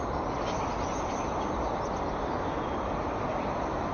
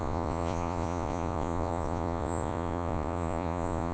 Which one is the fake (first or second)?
second